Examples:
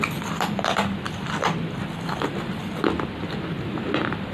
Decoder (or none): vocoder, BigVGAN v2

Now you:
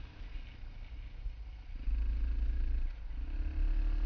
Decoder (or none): none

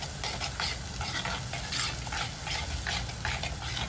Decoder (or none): none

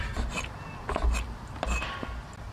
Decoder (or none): none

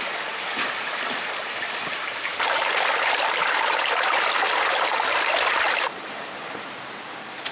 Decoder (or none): vocoder, BigVGAN v2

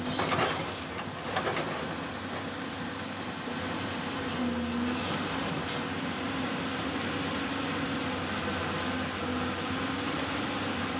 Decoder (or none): none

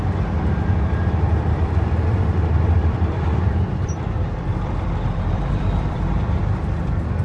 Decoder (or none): vocoder, BigVGAN v2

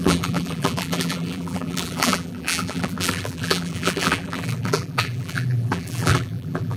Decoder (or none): vocoder, BigVGAN v2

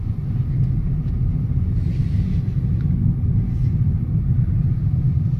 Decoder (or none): none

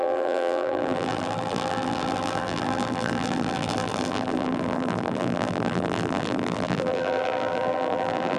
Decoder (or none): vocoder, BigVGAN v2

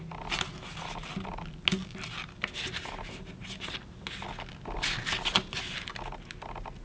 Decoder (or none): none